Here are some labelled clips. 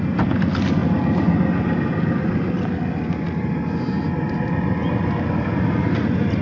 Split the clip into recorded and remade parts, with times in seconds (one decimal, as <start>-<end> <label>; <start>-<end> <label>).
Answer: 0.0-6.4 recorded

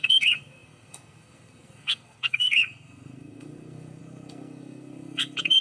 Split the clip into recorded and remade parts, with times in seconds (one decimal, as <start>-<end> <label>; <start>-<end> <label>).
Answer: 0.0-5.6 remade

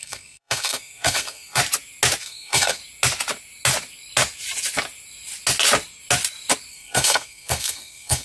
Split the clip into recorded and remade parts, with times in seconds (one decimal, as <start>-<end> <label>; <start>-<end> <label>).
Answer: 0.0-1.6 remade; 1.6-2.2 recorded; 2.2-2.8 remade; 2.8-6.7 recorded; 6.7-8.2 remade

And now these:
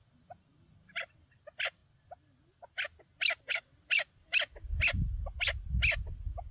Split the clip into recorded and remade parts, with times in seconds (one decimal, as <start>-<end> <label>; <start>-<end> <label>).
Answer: 0.0-6.5 recorded

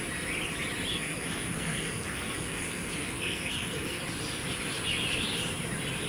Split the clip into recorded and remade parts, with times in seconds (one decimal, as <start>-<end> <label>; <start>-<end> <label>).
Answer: 0.0-0.9 recorded; 0.9-4.0 remade; 4.0-6.1 recorded